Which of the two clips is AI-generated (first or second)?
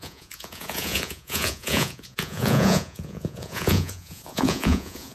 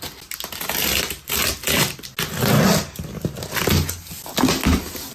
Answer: first